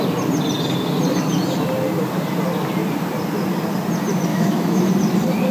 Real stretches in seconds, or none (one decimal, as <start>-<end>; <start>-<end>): 0.0-4.3; 4.9-5.5